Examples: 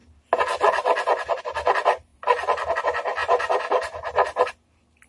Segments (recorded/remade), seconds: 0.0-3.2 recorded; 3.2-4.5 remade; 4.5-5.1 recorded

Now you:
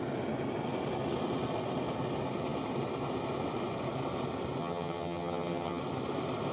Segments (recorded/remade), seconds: 0.0-4.6 recorded; 4.6-5.8 remade; 5.8-6.5 recorded

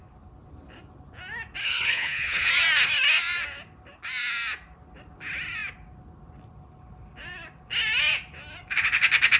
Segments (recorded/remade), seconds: 0.0-1.6 recorded; 1.6-2.5 remade; 2.5-9.4 recorded